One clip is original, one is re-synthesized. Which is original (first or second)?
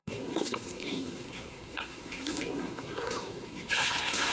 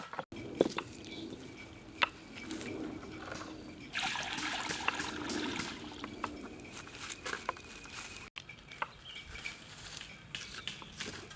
second